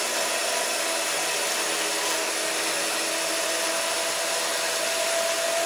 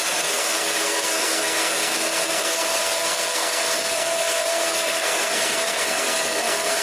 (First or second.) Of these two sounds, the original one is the first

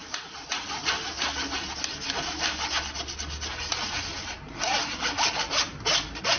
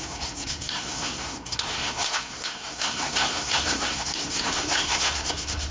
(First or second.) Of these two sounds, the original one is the first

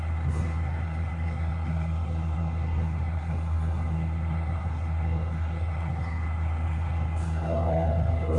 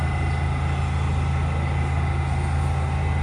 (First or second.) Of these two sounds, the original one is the second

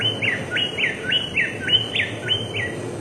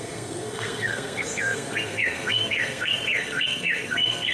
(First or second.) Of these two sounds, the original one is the first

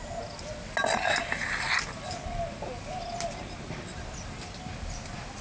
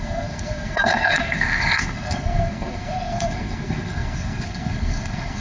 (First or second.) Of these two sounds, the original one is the first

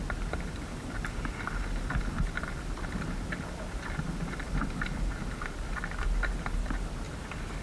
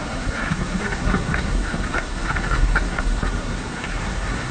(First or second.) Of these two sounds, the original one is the first